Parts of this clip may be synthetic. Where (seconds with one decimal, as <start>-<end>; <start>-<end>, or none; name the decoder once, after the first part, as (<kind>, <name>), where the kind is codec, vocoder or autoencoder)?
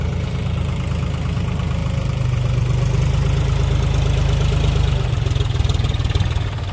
none